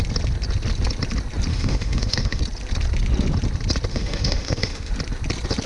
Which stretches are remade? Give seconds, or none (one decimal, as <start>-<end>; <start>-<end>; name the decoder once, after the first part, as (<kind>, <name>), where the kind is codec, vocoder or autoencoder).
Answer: 1.5-2.4 (autoencoder, DAC-VAE); 3.9-4.9

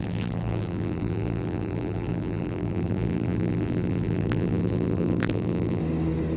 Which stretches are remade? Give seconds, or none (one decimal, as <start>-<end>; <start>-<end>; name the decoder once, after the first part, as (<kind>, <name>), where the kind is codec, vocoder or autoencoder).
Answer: 0.0-5.8 (vocoder, BigVGAN v2)

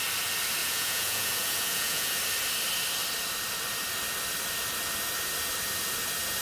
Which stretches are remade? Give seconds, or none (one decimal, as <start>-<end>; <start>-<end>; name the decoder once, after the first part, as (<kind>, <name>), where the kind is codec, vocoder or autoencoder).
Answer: 0.6-2.1 (vocoder, Vocos)

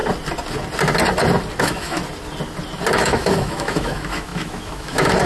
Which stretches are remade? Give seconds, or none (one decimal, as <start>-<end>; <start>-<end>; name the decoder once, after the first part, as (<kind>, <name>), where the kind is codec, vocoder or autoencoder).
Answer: 1.6-2.0 (autoencoder, DAC-VAE); 2.9-5.3

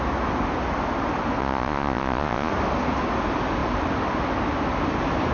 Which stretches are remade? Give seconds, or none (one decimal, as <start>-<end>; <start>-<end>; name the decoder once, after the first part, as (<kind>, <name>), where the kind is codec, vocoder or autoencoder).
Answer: 1.4-2.5 (vocoder, Vocos)

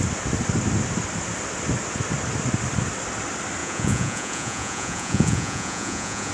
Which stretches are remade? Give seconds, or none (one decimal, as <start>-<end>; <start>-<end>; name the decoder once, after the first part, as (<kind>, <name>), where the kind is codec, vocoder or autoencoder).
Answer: 3.6-6.3 (vocoder, Vocos)